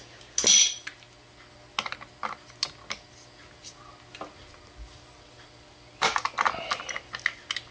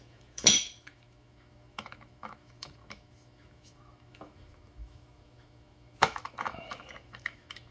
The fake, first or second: second